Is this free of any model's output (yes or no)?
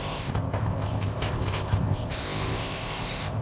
no